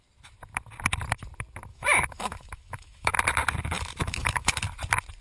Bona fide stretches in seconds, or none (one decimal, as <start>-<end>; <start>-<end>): 0.0-1.7; 3.1-4.0; 4.6-5.2